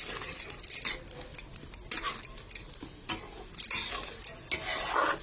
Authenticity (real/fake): real